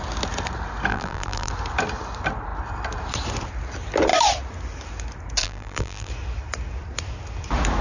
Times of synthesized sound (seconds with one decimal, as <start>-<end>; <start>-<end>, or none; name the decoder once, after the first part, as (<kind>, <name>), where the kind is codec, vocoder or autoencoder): 0.9-1.5 (vocoder, BigVGAN v2); 5.4-6.1